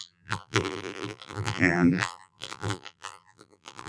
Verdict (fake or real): fake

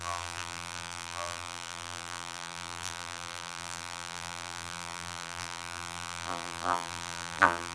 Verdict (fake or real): fake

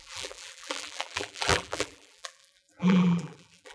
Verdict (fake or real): fake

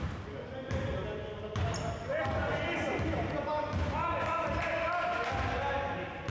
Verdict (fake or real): real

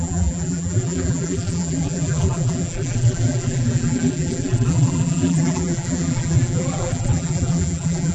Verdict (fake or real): fake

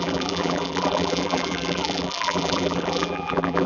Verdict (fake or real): fake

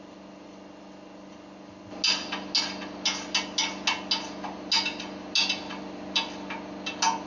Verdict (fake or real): real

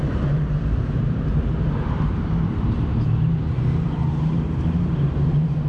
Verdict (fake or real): fake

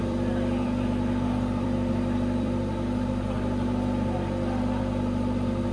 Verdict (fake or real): fake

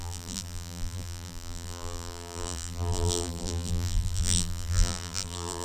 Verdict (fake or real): fake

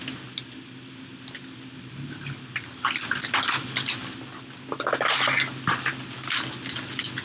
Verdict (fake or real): real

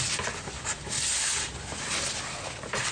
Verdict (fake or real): fake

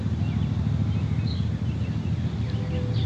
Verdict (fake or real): real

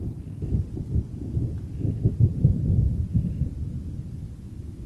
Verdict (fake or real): real